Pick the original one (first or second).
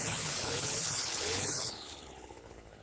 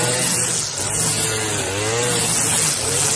second